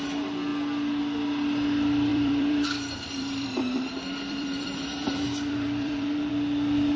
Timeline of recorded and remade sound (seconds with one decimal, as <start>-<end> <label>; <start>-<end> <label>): 0.0-2.1 recorded; 2.1-6.3 remade; 6.3-7.0 recorded